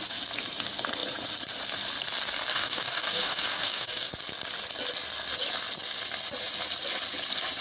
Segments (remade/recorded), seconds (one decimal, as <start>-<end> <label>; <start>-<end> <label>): 0.0-2.5 recorded; 2.5-4.1 remade; 4.1-7.6 recorded